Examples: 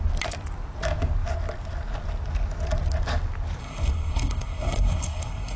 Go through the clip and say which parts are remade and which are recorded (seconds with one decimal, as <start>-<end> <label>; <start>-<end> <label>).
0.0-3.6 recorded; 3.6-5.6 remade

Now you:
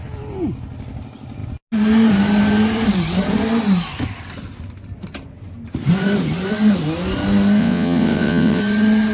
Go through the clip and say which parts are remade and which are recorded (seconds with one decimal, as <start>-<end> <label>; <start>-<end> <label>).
0.0-7.6 recorded; 7.6-8.6 remade; 8.6-9.1 recorded

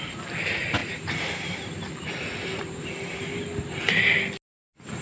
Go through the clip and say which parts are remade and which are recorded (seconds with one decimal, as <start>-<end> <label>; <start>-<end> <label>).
0.0-0.8 recorded; 0.8-3.8 remade; 3.8-5.0 recorded

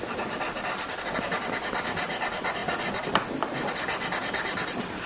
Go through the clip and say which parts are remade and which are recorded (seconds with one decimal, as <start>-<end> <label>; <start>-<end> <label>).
0.0-5.1 recorded